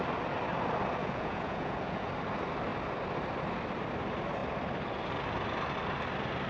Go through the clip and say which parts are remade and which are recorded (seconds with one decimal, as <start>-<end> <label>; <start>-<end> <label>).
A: 0.0-1.0 recorded; 1.0-2.1 remade; 2.1-6.5 recorded